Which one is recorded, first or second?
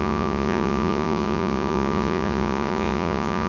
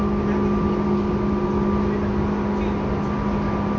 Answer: second